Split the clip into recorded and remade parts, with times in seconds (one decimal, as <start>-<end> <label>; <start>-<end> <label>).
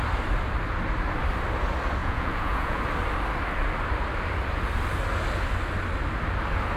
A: 0.0-2.0 recorded; 2.0-2.8 remade; 2.8-6.8 recorded